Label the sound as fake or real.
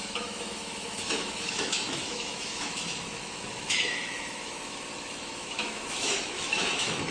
fake